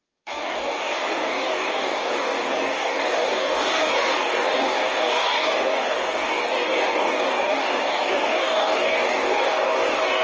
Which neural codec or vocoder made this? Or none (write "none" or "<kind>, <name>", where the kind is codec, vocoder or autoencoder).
codec, DAC